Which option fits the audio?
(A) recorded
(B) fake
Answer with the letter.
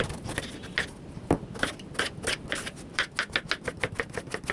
A